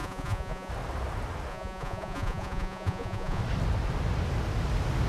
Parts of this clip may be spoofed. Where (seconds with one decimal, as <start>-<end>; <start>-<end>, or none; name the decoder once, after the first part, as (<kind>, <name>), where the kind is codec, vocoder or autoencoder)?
0.0-0.7 (vocoder, Vocos); 1.5-3.4